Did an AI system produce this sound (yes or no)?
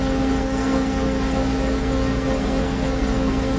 yes